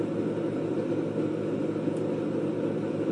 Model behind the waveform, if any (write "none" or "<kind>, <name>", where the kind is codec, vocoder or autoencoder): none